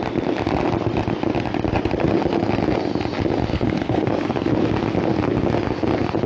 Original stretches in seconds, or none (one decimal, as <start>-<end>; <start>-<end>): 0.0-3.5; 4.5-6.3